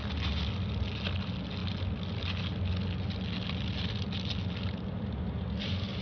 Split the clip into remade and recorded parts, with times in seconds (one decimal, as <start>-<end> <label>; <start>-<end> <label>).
0.0-6.0 recorded